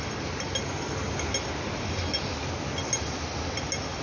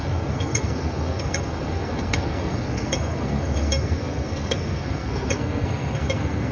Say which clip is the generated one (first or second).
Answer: second